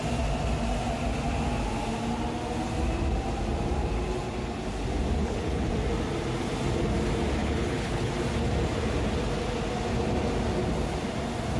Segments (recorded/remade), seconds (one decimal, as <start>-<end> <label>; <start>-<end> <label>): 0.0-5.2 recorded; 5.2-5.7 remade; 5.7-7.4 recorded; 7.4-8.1 remade; 8.1-11.6 recorded

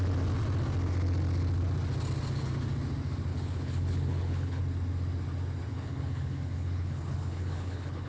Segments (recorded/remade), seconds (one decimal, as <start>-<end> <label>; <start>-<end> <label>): 0.0-3.3 recorded; 3.3-4.6 remade; 4.6-5.7 recorded; 5.7-8.1 remade

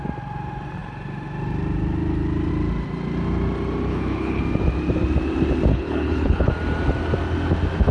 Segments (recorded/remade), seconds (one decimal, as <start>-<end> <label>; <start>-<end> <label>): 0.0-3.9 recorded; 3.9-4.4 remade; 4.4-5.7 recorded; 5.7-6.5 remade; 6.5-7.9 recorded

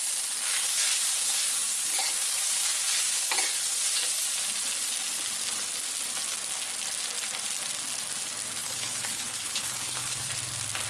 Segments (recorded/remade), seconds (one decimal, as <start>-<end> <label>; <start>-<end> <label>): 0.0-8.6 recorded; 8.6-10.3 remade; 10.3-10.9 recorded

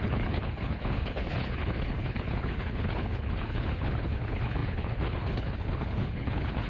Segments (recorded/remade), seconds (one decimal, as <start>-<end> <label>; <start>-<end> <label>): 0.0-6.7 remade